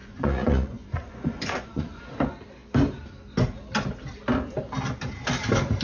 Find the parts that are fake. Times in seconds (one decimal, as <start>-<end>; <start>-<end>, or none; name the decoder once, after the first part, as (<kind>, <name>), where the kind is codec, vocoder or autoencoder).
0.0-2.0 (vocoder, Vocos)